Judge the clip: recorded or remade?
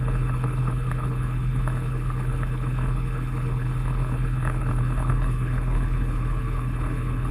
remade